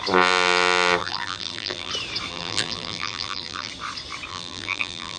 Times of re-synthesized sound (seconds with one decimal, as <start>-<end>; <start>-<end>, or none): 1.0-1.9; 2.3-3.7; 4.3-5.2